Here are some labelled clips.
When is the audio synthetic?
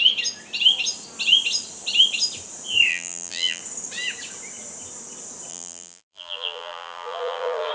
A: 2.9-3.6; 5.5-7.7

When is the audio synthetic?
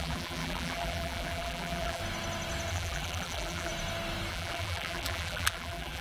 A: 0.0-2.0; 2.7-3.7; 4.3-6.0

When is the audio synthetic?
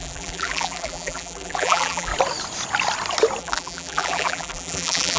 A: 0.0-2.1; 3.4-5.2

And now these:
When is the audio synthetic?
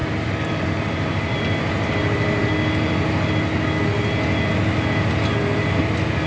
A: 0.0-1.4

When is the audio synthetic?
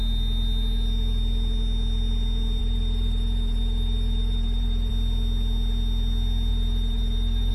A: 2.6-4.9; 6.5-7.5